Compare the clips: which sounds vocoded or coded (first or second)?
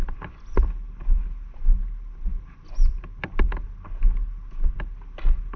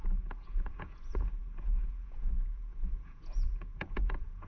second